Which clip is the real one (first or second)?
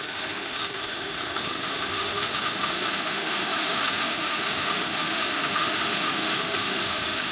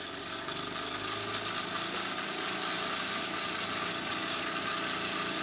second